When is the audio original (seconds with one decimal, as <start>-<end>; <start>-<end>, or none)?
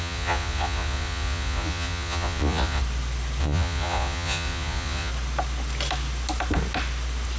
2.8-3.4; 5.1-7.4